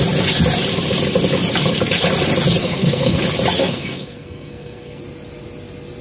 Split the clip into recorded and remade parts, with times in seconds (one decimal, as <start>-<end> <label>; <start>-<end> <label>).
0.0-2.6 recorded; 2.6-3.2 remade; 3.2-3.6 recorded; 3.6-5.0 remade; 5.0-6.0 recorded